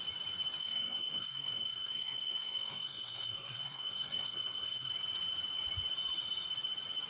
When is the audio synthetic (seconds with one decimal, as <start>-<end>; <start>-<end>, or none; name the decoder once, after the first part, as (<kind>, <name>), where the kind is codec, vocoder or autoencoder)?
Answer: 0.6-4.9 (codec, SNAC)